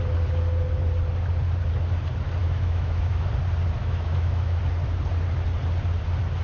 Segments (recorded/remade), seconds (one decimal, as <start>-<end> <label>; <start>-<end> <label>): 0.0-2.4 recorded; 2.4-3.3 remade; 3.3-3.8 recorded; 3.8-4.6 remade; 4.6-6.4 recorded